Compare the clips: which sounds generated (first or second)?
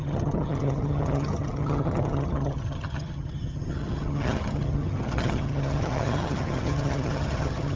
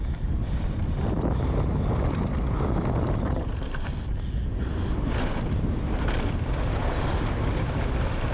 first